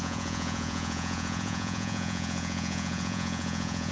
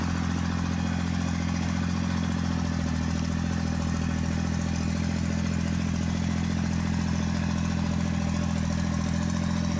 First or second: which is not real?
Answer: first